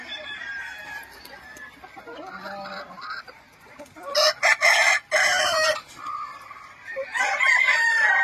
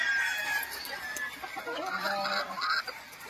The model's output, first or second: first